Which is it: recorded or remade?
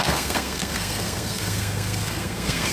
remade